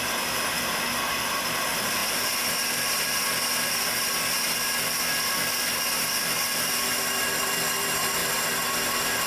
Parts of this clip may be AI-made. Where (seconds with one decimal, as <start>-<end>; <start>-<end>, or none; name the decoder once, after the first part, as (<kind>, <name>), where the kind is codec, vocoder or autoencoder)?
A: none